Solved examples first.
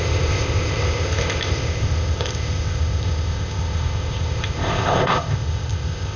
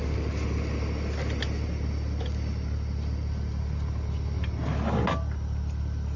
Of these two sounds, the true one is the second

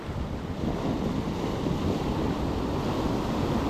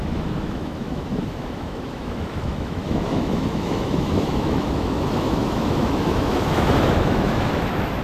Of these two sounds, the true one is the first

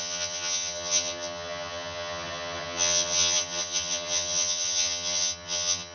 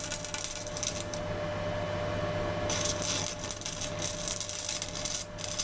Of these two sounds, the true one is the second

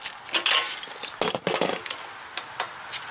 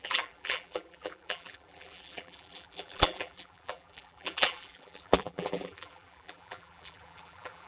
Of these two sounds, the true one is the first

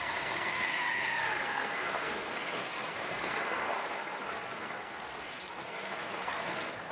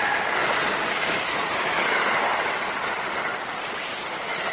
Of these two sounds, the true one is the second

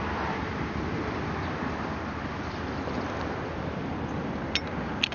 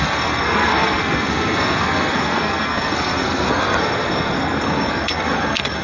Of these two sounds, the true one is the first